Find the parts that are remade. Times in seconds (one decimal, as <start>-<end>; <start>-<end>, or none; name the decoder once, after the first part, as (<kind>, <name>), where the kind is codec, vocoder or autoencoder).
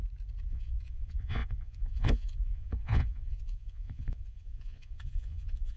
0.5-5.8 (vocoder, Vocos)